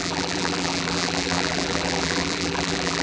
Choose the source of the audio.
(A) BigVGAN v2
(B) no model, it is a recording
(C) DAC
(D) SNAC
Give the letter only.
A